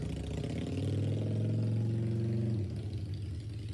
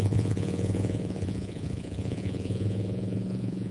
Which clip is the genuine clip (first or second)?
first